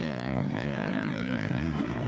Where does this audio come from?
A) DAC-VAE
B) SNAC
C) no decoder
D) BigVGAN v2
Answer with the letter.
B